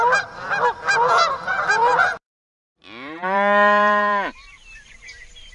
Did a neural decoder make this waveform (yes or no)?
yes